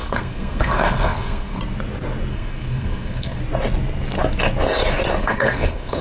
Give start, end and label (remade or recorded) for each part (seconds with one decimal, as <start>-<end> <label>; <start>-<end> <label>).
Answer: 0.0-1.6 remade; 1.6-2.3 recorded; 2.3-3.4 remade; 3.4-5.2 recorded; 5.2-6.0 remade